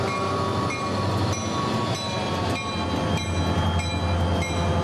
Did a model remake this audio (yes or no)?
no